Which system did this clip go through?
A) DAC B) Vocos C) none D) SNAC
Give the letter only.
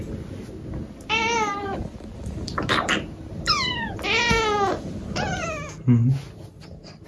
C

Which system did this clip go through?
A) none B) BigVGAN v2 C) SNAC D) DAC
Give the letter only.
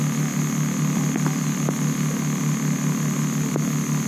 A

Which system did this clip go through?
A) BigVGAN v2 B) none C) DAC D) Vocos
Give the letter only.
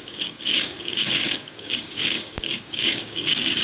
C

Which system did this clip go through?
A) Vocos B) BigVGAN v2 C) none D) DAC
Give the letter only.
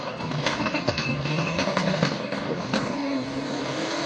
D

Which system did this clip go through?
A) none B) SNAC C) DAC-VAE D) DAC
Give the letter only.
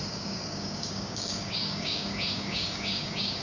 D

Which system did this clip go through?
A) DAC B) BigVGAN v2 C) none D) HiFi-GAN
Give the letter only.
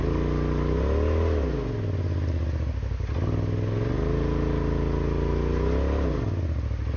C